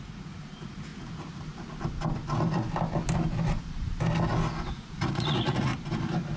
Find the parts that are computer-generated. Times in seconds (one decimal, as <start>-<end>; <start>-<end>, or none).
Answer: 0.0-0.9; 4.7-5.7